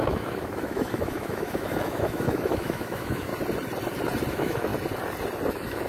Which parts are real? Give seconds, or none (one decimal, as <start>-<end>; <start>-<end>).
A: 3.3-4.3; 4.7-5.5